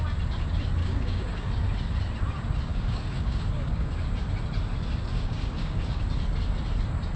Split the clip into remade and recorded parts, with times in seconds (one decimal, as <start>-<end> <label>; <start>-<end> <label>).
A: 0.0-0.8 recorded; 0.8-1.5 remade; 1.5-2.7 recorded; 2.7-3.9 remade; 3.9-5.1 recorded; 5.1-6.0 remade; 6.0-7.2 recorded